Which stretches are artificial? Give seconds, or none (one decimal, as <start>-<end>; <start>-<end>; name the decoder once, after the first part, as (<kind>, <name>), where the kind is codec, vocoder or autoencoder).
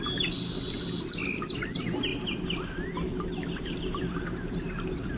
none